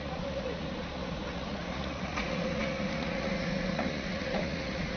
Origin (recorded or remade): remade